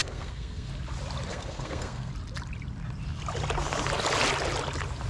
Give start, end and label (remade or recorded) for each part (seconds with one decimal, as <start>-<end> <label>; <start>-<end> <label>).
0.0-0.7 remade; 0.7-1.3 recorded; 1.3-2.1 remade; 2.1-5.1 recorded